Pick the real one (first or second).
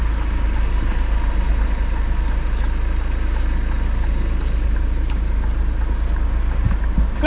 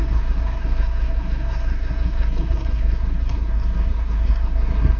first